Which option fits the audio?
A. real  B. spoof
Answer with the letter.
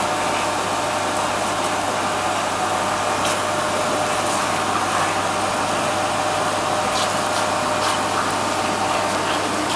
A